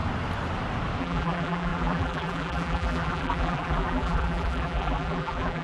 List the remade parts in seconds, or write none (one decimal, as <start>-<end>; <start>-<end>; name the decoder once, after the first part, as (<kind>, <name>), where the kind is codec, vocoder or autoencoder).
1.0-5.6 (vocoder, BigVGAN v2)